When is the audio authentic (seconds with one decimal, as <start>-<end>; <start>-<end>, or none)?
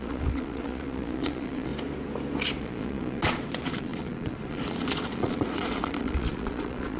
1.7-2.6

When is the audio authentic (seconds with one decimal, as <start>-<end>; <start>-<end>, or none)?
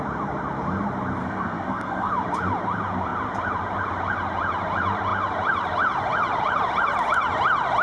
0.0-1.2; 2.1-7.8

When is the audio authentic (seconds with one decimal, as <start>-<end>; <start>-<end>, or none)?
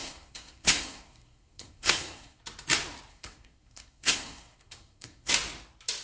2.4-3.1; 5.3-6.0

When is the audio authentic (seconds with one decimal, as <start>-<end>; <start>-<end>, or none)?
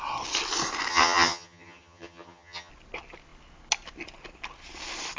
0.0-0.9; 2.7-5.2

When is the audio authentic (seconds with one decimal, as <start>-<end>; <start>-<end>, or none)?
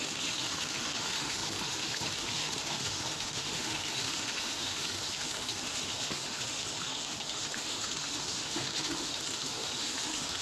none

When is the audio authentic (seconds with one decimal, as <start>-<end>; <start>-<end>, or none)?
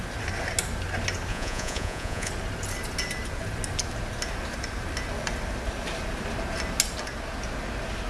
0.0-1.3; 2.3-8.1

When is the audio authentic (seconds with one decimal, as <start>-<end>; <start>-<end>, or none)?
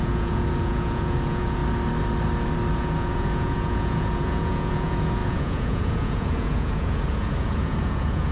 1.6-2.7